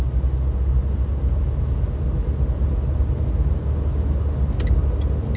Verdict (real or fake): real